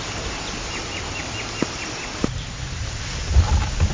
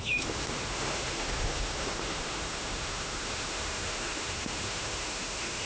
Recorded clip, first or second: first